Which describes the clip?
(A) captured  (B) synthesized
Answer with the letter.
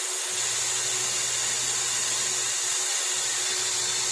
A